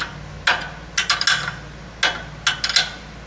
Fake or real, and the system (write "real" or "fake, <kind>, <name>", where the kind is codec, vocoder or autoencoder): real